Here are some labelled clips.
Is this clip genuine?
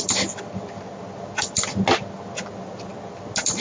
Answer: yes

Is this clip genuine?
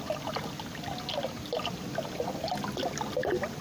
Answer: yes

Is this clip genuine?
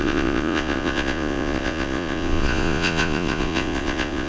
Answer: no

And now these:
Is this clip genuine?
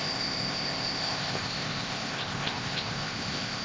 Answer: no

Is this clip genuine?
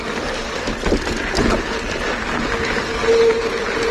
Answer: yes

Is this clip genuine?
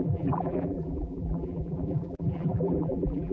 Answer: no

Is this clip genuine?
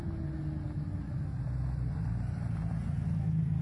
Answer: yes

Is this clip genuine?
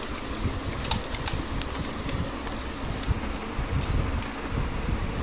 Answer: yes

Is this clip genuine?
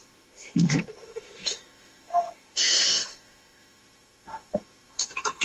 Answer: no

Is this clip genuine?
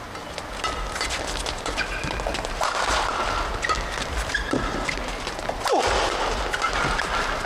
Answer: yes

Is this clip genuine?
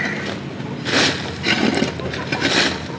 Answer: yes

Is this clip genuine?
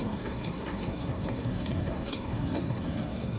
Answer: no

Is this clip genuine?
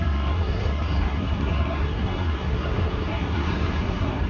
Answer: no